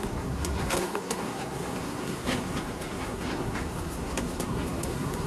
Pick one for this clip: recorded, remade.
remade